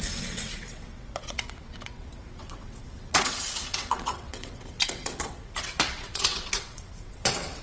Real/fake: fake